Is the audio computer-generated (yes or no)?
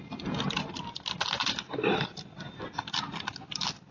no